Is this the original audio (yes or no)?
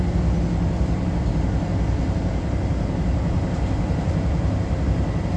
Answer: yes